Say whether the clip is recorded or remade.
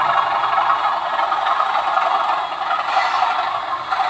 recorded